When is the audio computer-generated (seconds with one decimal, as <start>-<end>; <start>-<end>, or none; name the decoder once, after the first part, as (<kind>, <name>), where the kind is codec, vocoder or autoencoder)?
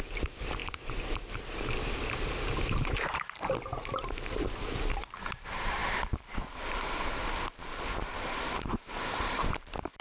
0.0-0.6 (vocoder, BigVGAN v2); 2.8-5.8; 8.0-10.0